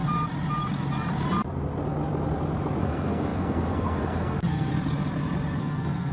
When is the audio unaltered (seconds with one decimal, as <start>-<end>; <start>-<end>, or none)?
0.0-2.8; 4.7-5.6